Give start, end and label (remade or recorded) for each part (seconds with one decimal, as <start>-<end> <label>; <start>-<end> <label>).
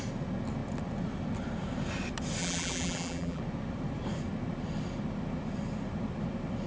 0.0-2.4 recorded; 2.4-3.4 remade; 3.4-6.7 recorded